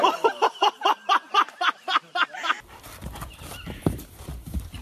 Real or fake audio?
fake